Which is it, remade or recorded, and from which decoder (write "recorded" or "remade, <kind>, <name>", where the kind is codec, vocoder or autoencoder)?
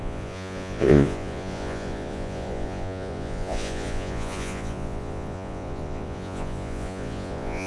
remade, vocoder, Vocos